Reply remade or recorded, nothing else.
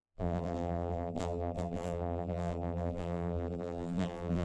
remade